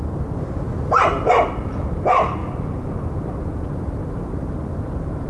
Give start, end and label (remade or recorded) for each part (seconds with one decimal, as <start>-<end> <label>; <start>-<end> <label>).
0.0-0.7 recorded; 0.7-1.3 remade; 1.3-2.4 recorded; 2.4-4.4 remade; 4.4-5.3 recorded